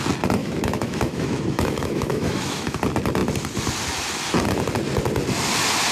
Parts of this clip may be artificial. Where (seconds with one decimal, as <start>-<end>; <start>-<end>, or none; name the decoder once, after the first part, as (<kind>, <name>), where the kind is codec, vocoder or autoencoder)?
0.4-2.8 (autoencoder, DAC-VAE)